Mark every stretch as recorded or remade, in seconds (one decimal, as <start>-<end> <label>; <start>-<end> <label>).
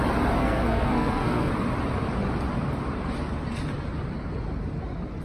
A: 0.0-0.4 recorded; 0.4-1.5 remade; 1.5-5.2 recorded